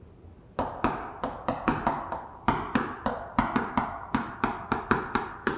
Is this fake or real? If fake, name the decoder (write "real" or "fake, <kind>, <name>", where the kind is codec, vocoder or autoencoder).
real